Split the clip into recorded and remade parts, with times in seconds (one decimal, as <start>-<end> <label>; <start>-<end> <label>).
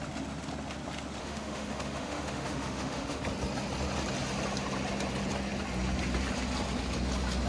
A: 0.0-1.2 recorded; 1.2-3.2 remade; 3.2-7.5 recorded